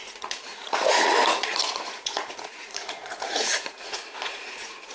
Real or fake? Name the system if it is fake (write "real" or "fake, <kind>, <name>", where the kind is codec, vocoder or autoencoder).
fake, vocoder, Vocos